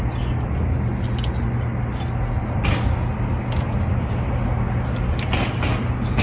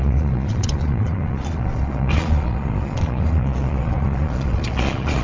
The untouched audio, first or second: first